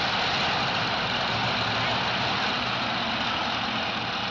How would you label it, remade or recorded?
recorded